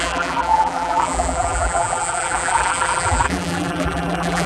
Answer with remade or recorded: remade